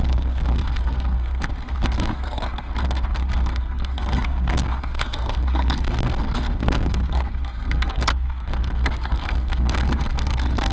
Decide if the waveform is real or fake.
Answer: fake